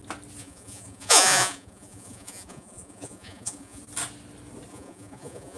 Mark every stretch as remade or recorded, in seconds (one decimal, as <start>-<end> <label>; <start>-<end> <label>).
0.0-0.4 recorded; 0.4-3.8 remade; 3.8-4.7 recorded; 4.7-5.6 remade